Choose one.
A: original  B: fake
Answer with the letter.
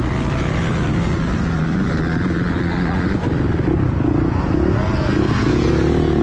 A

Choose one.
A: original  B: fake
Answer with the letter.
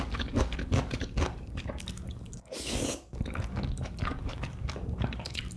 B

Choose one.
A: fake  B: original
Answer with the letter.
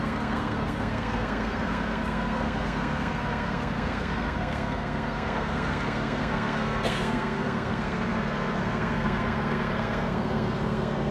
A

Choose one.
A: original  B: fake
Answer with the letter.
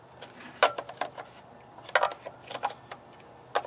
A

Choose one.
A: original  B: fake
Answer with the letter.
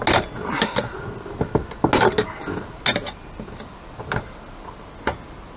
A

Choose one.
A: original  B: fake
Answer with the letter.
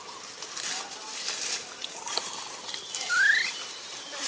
A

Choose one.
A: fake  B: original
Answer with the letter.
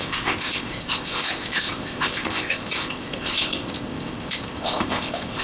A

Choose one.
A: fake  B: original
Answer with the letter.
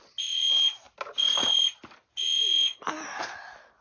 B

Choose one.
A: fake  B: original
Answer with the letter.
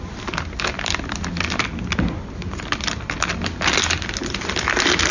B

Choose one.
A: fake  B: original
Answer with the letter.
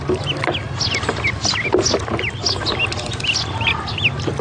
B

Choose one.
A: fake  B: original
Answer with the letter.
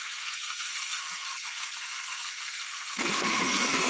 A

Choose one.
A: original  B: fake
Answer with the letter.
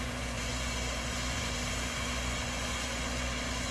B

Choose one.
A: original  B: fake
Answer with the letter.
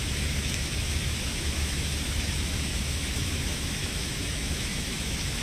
B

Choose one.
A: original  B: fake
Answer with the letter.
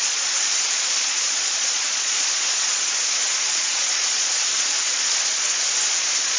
B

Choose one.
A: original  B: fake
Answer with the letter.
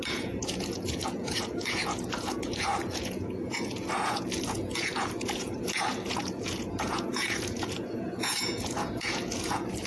B